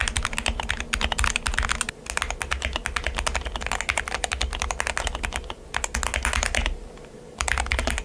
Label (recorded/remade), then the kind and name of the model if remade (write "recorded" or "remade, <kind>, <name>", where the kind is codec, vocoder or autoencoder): recorded